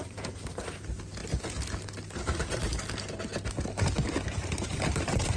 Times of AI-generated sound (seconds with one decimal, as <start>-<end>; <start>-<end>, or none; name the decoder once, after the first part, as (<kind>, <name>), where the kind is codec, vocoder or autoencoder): 0.0-1.2 (vocoder, BigVGAN v2); 4.4-5.4